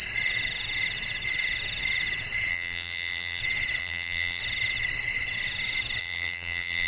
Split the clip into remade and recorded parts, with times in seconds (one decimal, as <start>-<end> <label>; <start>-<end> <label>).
0.0-2.5 recorded; 2.5-3.4 remade; 3.4-3.8 recorded; 3.8-4.4 remade; 4.4-6.0 recorded; 6.0-6.9 remade